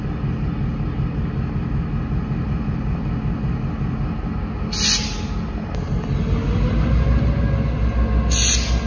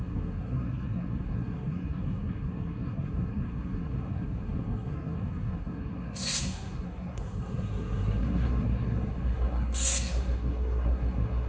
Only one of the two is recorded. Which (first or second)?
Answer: first